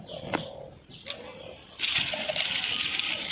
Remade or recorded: recorded